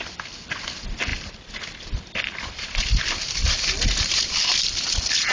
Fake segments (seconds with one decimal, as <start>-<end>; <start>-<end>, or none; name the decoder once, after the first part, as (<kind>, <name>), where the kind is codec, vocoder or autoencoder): none